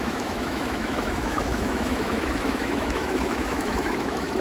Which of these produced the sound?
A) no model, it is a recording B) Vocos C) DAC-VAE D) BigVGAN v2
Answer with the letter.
C